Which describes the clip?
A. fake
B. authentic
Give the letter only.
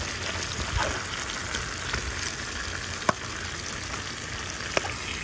B